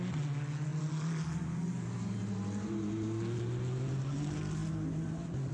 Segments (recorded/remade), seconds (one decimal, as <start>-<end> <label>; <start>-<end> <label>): 0.0-5.5 recorded